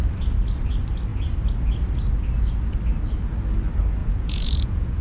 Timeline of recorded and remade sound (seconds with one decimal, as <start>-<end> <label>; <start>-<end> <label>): 0.0-4.0 recorded; 4.0-5.0 remade